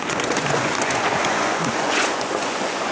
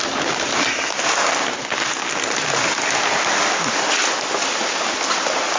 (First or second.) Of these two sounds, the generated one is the first